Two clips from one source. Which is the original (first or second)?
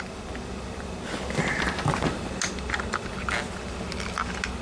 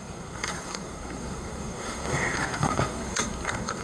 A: first